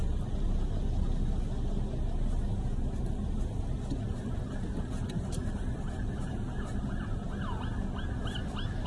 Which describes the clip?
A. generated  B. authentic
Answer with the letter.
B